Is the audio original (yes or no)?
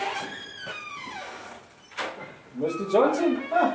yes